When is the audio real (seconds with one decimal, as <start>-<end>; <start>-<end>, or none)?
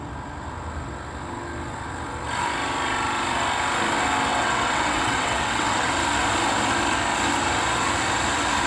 0.0-4.3; 5.9-8.7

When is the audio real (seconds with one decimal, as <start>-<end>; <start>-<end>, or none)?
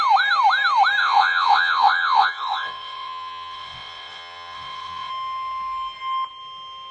0.0-1.0; 5.1-6.9